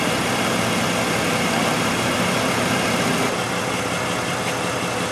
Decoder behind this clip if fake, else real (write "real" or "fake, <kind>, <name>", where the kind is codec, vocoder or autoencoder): real